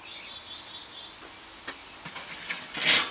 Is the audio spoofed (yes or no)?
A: no